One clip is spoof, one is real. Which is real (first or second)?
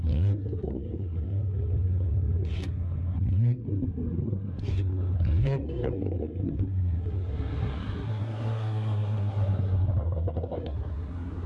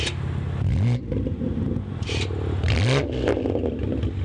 second